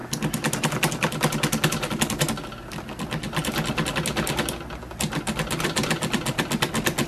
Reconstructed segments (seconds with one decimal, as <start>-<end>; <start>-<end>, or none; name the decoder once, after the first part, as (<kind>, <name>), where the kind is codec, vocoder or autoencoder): none

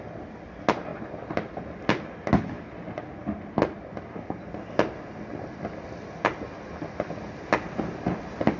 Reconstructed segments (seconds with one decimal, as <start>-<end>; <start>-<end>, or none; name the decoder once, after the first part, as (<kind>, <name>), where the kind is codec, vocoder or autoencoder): none

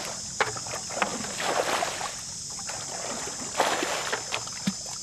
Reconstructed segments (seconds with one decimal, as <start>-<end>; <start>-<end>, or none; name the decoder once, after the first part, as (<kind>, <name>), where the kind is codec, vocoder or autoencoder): none

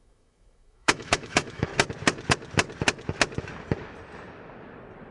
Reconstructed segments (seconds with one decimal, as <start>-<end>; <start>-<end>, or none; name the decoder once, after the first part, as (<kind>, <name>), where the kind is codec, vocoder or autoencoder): 0.0-1.7 (autoencoder, DAC-VAE)

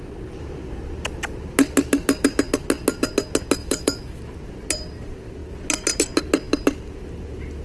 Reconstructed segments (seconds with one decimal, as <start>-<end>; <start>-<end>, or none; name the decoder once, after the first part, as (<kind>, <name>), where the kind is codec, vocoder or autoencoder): 3.6-4.2 (autoencoder, DAC-VAE)

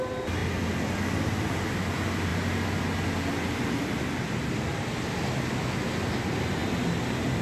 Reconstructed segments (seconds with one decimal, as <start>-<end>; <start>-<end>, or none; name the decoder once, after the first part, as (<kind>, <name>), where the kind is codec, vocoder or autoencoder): none